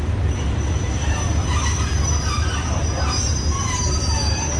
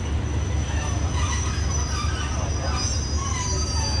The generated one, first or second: first